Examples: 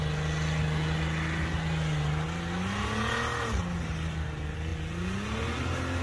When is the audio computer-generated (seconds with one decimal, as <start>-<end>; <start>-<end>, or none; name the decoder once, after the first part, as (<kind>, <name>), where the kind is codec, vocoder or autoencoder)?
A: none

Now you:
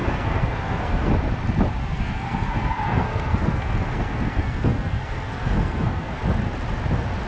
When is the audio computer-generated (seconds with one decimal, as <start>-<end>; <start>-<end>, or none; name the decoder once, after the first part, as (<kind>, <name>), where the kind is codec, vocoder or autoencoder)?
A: 0.0-1.1 (codec, SNAC); 1.8-6.2

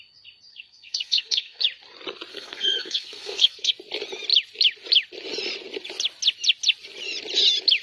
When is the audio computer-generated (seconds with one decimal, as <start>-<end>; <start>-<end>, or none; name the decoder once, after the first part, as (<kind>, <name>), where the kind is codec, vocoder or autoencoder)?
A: 0.5-1.6 (codec, SNAC); 2.3-3.7

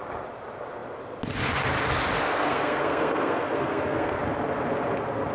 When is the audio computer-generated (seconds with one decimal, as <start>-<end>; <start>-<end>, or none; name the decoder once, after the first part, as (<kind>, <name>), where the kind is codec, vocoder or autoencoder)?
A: 2.3-4.2 (codec, SNAC)

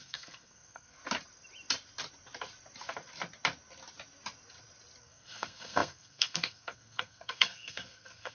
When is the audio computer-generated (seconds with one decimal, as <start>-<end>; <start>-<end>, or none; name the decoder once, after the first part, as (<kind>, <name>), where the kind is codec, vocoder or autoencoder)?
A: 0.0-1.0 (codec, SNAC); 5.0-8.3

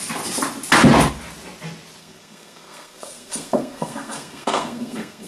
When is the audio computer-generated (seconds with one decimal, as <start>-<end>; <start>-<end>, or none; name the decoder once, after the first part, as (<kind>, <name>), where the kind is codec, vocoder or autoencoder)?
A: 2.0-5.3 (codec, SNAC)